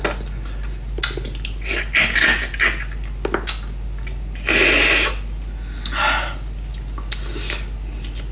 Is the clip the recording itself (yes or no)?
yes